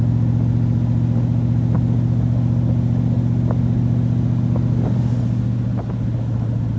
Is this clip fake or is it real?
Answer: real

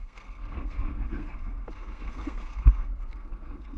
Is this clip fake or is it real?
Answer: fake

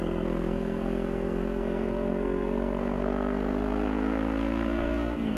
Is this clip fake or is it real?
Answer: fake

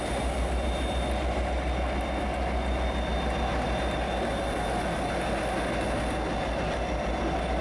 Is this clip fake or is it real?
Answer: real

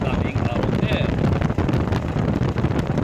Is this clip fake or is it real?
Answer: real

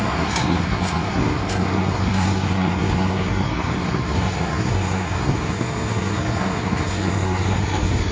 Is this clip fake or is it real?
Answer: fake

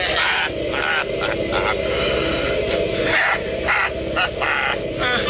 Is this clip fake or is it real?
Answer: real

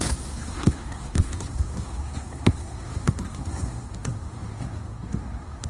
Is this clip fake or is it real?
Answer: fake